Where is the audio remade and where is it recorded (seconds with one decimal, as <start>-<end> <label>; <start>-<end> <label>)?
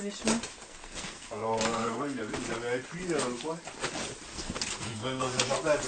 0.0-0.6 recorded; 0.6-2.2 remade; 2.2-4.3 recorded; 4.3-5.4 remade; 5.4-5.9 recorded